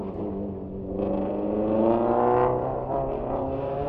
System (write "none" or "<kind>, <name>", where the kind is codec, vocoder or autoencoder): none